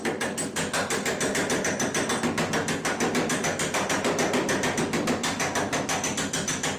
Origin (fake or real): real